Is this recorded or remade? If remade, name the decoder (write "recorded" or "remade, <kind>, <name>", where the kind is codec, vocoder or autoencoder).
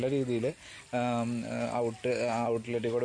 recorded